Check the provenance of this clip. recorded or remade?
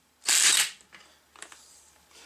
recorded